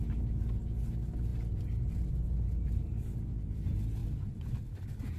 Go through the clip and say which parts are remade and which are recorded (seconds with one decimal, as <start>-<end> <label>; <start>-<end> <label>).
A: 0.0-5.2 recorded